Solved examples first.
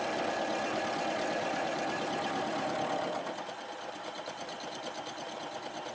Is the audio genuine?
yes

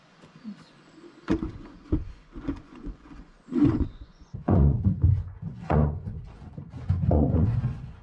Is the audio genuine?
no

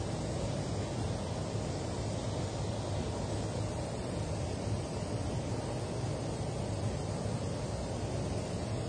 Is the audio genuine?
yes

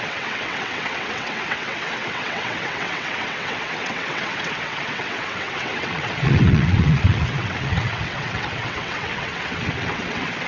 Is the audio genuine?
no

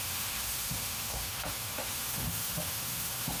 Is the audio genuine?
no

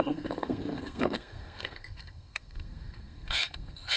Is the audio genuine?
no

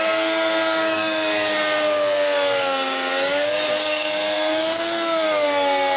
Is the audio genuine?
no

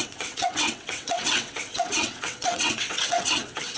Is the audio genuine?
no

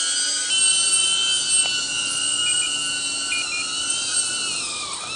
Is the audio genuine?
yes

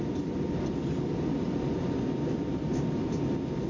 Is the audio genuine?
yes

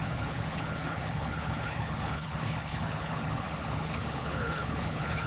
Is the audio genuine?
no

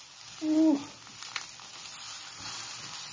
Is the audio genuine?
yes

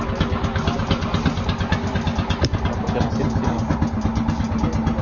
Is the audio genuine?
yes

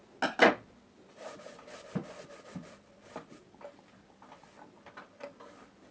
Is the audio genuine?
yes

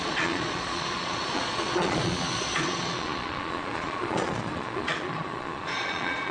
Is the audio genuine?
no